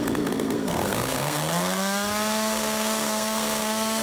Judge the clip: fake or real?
fake